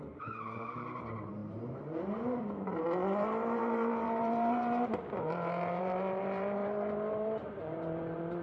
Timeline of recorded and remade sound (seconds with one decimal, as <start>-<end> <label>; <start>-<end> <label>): 0.0-8.4 remade